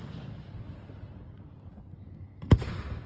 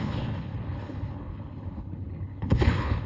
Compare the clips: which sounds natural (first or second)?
first